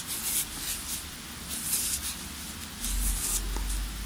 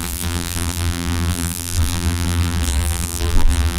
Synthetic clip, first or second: second